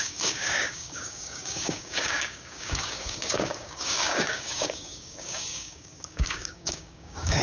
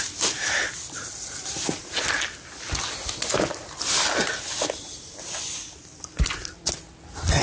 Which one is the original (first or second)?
second